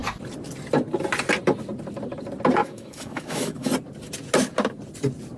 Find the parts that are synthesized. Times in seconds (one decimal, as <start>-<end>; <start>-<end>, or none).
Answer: 2.6-3.7